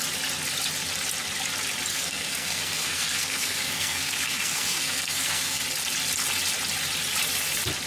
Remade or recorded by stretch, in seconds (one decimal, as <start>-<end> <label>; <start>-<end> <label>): 0.0-1.9 recorded; 1.9-5.6 remade; 5.6-7.9 recorded